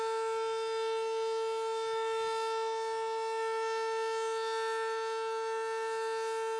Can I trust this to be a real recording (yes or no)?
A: yes